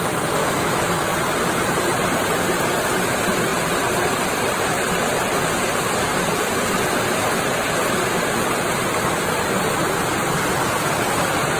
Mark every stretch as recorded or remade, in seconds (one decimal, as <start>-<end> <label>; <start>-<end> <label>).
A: 0.0-0.4 recorded; 0.4-1.1 remade; 1.1-11.6 recorded